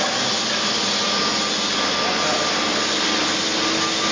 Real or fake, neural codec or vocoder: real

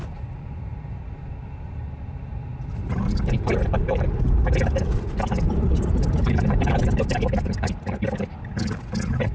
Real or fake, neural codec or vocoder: real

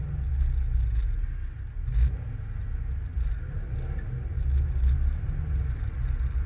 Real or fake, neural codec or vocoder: real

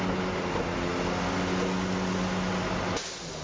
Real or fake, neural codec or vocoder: real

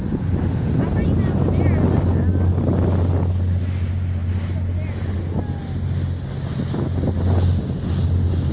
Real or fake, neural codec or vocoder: real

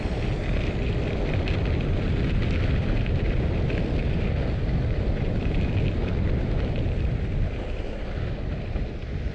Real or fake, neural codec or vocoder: real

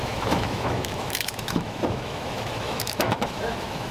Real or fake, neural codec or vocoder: fake, autoencoder, DAC-VAE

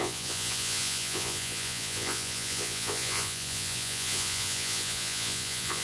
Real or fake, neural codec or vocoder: fake, vocoder, Vocos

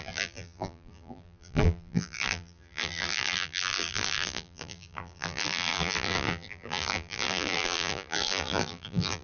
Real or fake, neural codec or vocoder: fake, vocoder, BigVGAN v2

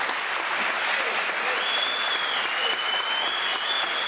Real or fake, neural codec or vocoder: real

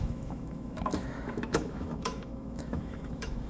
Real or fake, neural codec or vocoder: fake, autoencoder, DAC-VAE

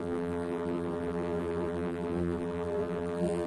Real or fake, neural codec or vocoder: fake, vocoder, BigVGAN v2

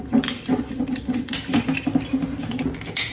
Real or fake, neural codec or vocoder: real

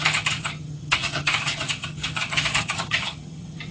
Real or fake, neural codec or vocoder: fake, vocoder, HiFi-GAN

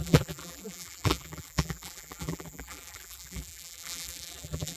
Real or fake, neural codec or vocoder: fake, vocoder, BigVGAN v2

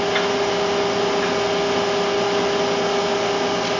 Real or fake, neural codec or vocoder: real